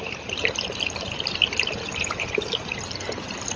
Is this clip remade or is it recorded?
remade